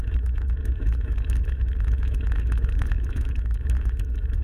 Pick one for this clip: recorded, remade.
remade